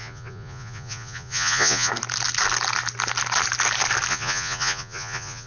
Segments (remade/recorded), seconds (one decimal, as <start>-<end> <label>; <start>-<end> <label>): 0.0-1.9 remade; 1.9-4.1 recorded; 4.1-5.5 remade